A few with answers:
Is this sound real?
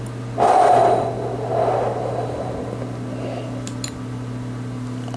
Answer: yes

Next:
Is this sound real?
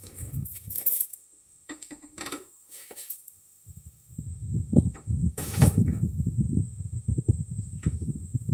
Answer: no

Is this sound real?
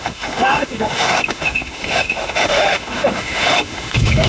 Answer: no